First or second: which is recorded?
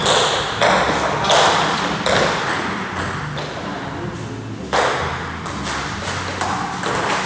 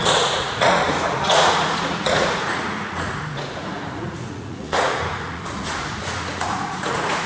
first